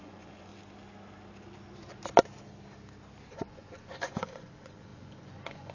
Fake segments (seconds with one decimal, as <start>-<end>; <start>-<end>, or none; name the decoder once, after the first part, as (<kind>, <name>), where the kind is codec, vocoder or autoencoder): 0.0-0.5 (vocoder, Vocos); 3.3-5.7